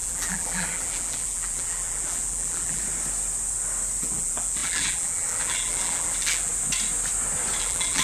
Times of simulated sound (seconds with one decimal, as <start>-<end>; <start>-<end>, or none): 0.0-2.8; 4.0-6.5; 7.6-8.0